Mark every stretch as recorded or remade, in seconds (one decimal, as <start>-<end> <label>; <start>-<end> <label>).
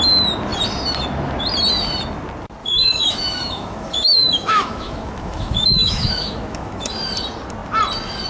0.0-2.6 recorded; 2.6-6.9 remade; 6.9-8.3 recorded